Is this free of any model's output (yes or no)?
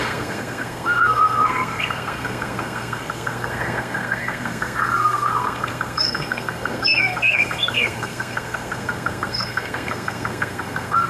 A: no